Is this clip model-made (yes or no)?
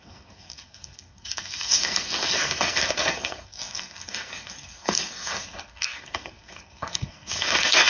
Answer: yes